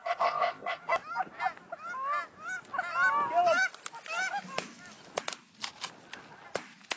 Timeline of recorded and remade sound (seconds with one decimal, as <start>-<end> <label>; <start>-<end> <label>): 0.0-0.8 remade; 0.8-7.0 recorded